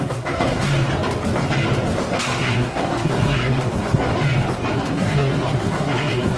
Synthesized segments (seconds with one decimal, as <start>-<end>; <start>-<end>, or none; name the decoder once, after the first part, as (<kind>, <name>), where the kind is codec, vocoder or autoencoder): 0.0-0.7 (codec, SNAC); 2.1-4.1; 4.7-6.4